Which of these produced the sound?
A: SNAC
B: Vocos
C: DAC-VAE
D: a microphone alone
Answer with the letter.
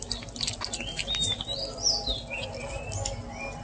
D